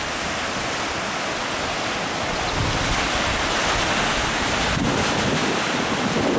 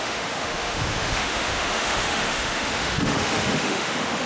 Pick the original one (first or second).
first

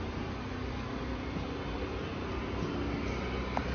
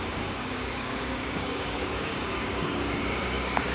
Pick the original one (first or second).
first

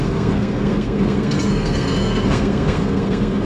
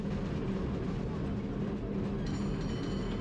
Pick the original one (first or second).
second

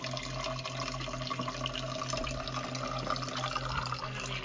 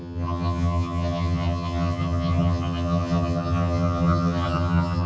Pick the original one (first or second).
first